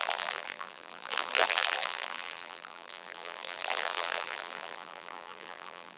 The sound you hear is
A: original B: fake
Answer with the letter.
B